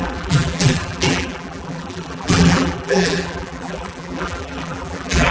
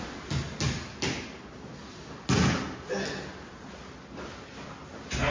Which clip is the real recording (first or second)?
second